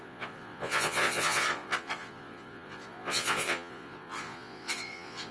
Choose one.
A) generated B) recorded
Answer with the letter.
A